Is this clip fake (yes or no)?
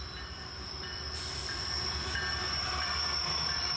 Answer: yes